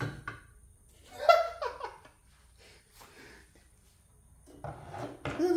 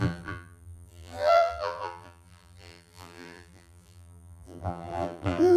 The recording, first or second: first